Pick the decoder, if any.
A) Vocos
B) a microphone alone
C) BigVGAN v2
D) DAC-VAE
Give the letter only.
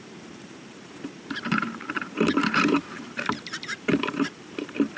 C